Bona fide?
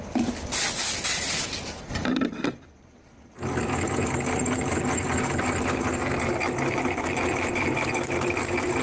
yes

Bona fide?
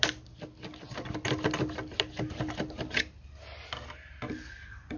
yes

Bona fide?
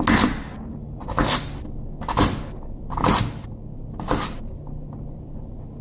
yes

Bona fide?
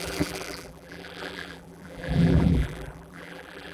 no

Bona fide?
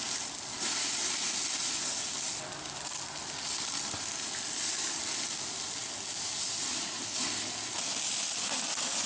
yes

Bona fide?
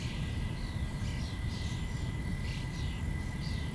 yes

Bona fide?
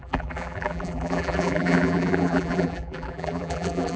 no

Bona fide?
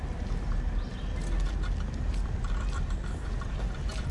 yes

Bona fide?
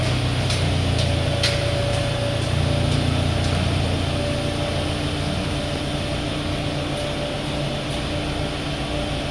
yes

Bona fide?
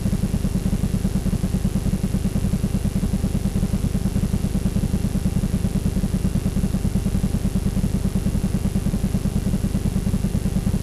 yes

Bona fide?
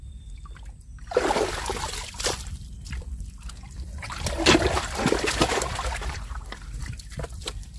no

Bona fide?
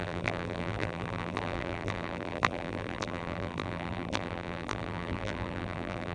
no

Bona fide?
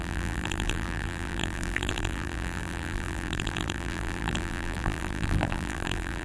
no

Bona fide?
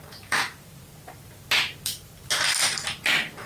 no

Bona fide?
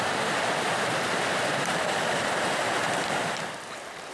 yes